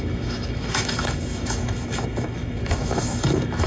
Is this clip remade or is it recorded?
remade